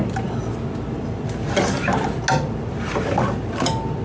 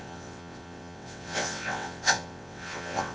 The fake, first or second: second